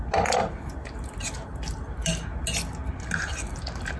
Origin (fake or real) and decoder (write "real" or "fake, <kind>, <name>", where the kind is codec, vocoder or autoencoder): real